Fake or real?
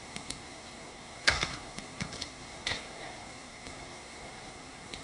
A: fake